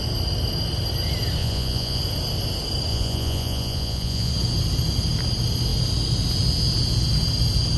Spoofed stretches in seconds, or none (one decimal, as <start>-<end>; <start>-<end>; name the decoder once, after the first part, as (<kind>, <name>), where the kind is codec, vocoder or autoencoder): 1.4-2.0 (vocoder, Vocos); 2.9-4.3